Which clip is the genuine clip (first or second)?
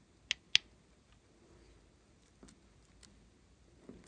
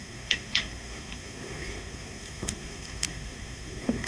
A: first